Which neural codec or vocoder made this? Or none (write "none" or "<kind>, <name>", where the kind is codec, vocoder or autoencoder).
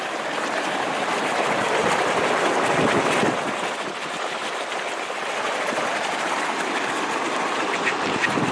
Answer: none